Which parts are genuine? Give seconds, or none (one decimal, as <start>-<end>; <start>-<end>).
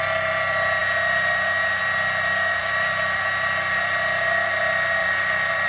0.0-2.6; 4.6-5.0